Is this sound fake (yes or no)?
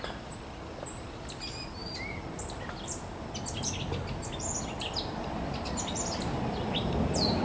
no